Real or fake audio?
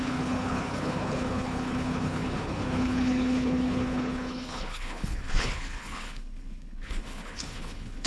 fake